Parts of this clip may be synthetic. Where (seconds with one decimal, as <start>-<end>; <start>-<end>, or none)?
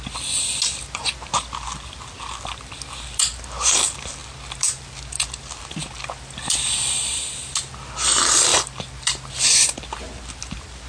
none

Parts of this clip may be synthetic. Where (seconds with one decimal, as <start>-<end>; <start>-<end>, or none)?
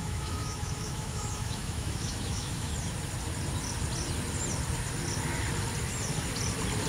0.0-2.7